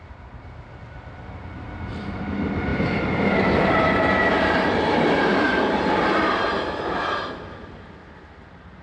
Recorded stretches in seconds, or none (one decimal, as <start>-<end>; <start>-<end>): 0.0-8.8